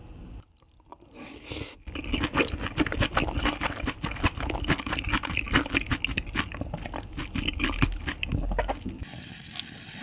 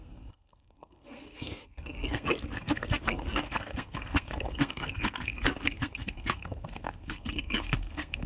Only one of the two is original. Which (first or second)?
first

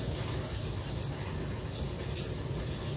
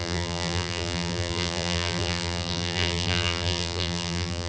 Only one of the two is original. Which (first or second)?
first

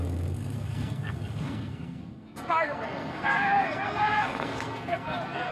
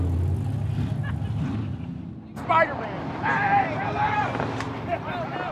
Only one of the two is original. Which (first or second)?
second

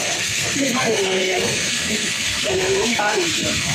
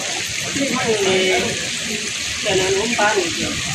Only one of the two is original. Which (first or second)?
second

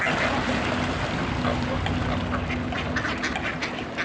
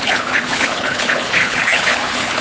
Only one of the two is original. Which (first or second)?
first